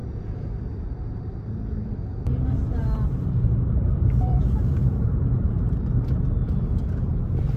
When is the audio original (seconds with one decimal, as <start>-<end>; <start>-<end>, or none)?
1.6-2.8; 6.1-7.6